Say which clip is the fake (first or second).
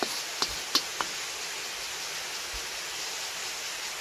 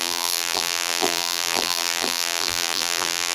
second